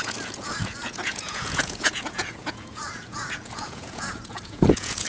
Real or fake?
fake